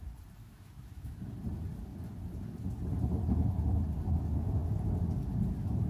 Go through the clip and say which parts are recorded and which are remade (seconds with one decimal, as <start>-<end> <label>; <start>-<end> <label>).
0.0-0.4 recorded; 0.4-1.2 remade; 1.2-5.9 recorded